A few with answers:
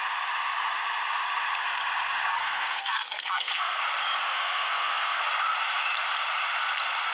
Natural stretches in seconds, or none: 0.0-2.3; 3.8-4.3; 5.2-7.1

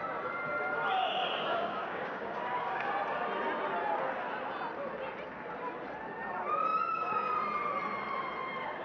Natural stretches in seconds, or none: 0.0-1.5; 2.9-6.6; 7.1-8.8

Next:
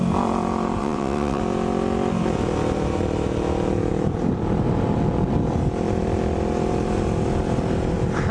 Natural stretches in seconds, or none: 0.0-0.8; 1.4-8.3

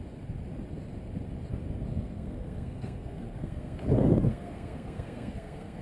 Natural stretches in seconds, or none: 0.0-1.9

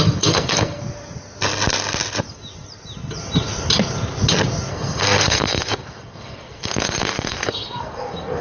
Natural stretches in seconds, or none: 0.8-4.7

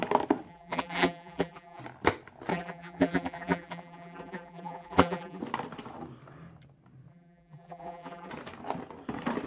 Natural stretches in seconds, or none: 0.0-0.5; 1.8-2.5; 5.4-7.1; 8.3-9.5

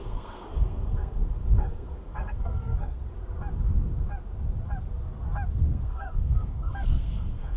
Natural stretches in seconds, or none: 3.0-5.6